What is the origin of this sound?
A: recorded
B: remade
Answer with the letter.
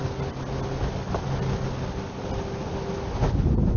A